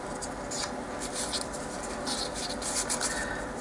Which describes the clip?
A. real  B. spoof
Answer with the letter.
A